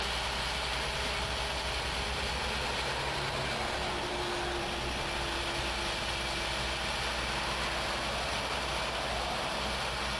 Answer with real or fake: real